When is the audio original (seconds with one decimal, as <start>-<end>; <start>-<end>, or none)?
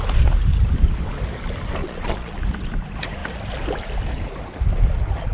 0.0-1.8; 2.4-5.3